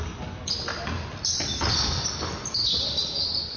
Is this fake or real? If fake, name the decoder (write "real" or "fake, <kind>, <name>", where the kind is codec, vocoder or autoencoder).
real